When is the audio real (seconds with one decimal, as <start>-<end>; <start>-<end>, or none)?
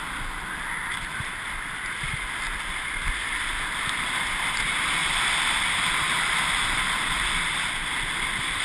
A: 0.0-8.6